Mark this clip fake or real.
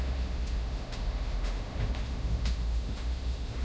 fake